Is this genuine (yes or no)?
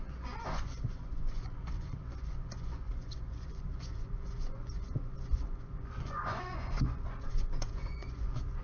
no